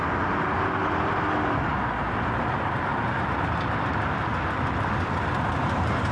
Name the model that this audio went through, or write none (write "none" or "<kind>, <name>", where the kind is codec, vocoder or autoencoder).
none